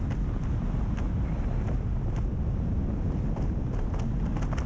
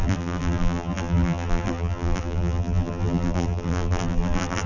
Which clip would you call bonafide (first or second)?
first